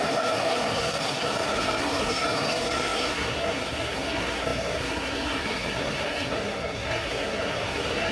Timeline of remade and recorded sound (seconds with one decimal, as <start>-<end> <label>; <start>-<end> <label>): 0.0-8.1 remade